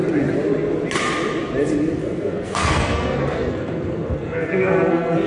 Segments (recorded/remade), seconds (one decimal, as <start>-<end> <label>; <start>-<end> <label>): 0.0-2.0 recorded; 2.0-5.3 remade